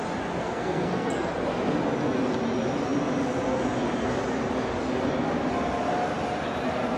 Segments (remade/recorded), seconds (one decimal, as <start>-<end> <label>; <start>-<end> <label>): 0.0-0.4 recorded; 0.4-1.3 remade; 1.3-7.0 recorded